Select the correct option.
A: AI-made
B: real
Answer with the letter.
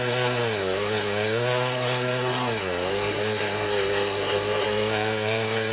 A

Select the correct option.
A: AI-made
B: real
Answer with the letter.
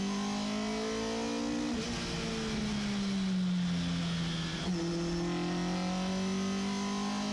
B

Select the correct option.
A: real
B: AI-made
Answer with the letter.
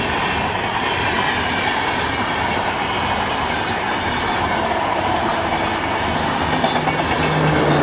A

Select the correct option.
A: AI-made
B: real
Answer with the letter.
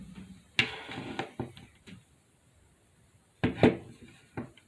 B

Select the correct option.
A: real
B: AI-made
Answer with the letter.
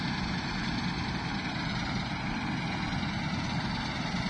A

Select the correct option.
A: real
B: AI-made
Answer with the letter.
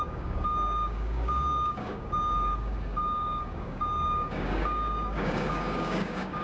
B